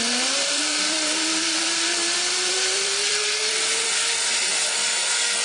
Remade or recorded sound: remade